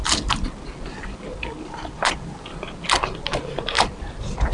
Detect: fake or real real